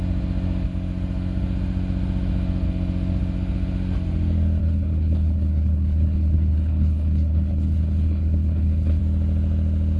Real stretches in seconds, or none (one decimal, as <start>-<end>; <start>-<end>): 0.0-4.6; 9.0-10.0